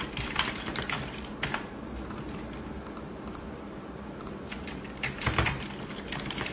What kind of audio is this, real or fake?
fake